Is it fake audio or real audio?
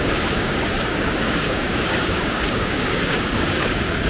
fake